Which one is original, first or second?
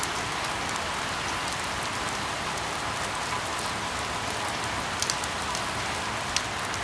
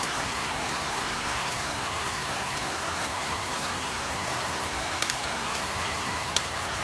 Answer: first